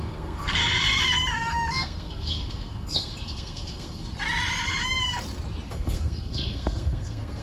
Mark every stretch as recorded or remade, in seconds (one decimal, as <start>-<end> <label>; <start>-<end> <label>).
0.0-0.6 remade; 0.6-1.7 recorded; 1.7-4.1 remade; 4.1-5.7 recorded; 5.7-7.4 remade